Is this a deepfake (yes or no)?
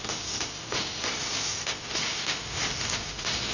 no